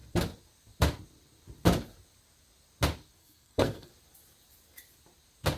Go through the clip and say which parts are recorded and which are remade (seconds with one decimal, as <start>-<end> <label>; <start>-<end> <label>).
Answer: 0.0-3.2 recorded; 3.2-3.9 remade; 3.9-5.6 recorded